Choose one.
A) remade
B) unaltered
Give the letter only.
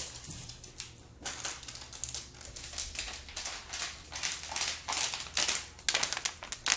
B